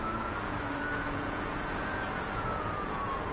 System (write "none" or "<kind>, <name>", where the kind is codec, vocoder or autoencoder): vocoder, Vocos